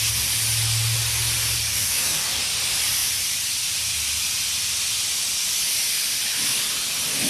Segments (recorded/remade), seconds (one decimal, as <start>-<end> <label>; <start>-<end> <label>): 0.0-1.7 recorded; 1.7-2.4 remade; 2.4-7.3 recorded